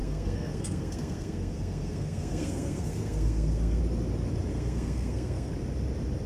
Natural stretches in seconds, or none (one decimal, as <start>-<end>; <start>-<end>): 3.8-4.5; 5.5-6.3